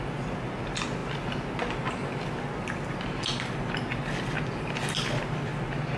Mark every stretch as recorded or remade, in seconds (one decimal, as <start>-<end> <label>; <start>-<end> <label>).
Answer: 0.0-6.0 recorded